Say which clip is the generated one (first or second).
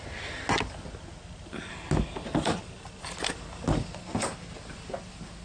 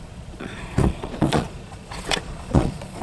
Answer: second